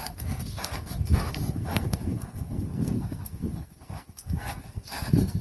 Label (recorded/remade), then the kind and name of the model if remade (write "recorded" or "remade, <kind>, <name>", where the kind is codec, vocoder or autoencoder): remade, codec, SNAC